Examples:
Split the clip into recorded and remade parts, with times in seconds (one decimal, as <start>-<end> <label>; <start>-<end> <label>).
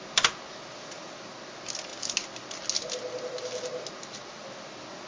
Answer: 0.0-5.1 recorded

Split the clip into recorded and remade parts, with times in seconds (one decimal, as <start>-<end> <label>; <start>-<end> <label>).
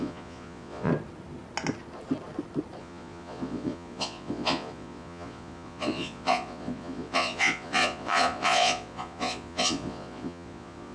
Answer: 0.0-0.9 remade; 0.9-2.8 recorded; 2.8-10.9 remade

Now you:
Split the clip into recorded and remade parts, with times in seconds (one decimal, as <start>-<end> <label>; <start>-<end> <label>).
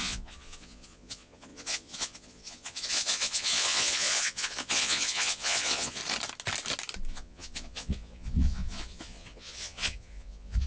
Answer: 0.0-6.0 remade; 6.0-7.1 recorded; 7.1-10.7 remade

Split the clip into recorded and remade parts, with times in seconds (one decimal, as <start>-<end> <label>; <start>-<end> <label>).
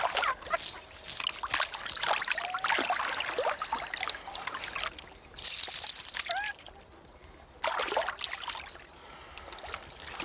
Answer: 0.0-10.2 recorded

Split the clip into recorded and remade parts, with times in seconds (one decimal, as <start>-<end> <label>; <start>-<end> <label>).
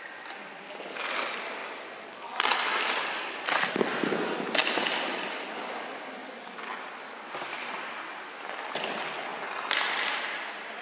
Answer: 0.0-10.8 recorded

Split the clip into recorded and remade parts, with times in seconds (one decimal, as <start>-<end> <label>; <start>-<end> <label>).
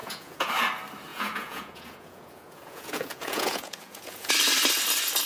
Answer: 0.0-0.5 remade; 0.5-1.1 recorded; 1.1-4.3 remade; 4.3-5.3 recorded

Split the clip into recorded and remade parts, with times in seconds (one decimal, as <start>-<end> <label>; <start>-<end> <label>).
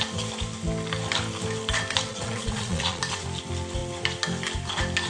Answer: 0.0-2.1 recorded; 2.1-3.0 remade; 3.0-5.1 recorded